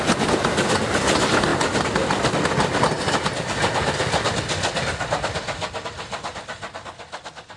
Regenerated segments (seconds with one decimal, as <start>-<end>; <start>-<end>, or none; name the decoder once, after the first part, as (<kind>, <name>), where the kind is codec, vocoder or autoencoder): none